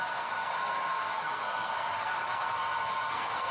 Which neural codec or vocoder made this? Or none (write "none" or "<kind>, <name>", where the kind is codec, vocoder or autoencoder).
codec, SNAC